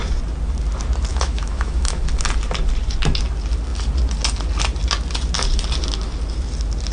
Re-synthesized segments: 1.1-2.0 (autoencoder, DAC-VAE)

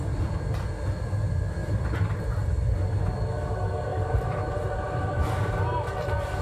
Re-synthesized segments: 1.6-2.2 (vocoder, BigVGAN v2); 3.9-6.4